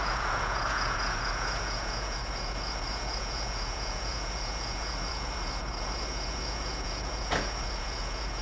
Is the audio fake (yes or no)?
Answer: yes